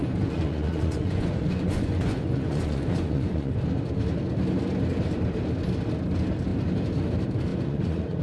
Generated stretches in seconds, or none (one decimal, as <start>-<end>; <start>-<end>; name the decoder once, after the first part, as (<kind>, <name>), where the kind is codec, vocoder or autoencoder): 0.0-3.5 (vocoder, Vocos); 7.5-8.2